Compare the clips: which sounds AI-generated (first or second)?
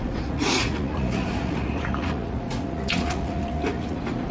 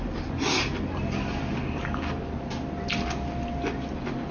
first